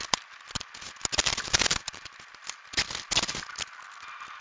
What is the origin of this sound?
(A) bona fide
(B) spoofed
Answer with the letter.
A